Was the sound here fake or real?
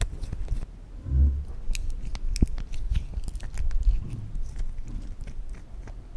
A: real